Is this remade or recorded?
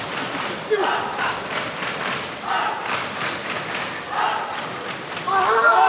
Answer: remade